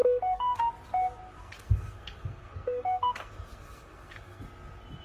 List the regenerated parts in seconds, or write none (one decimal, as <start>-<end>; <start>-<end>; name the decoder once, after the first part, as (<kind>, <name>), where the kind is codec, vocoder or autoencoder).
0.0-0.6 (codec, SNAC); 1.4-4.4